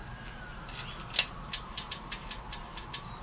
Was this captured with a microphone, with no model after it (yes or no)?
yes